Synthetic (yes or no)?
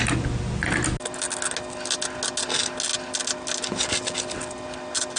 no